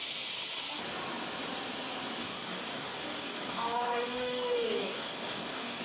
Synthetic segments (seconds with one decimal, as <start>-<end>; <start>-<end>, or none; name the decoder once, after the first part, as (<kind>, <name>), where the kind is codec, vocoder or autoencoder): 2.2-5.8 (codec, DAC)